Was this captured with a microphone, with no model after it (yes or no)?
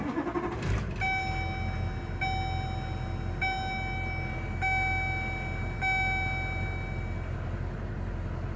yes